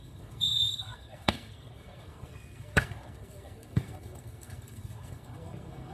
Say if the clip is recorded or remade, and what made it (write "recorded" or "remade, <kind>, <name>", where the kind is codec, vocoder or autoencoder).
remade, codec, SNAC